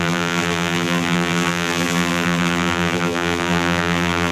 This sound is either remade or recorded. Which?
remade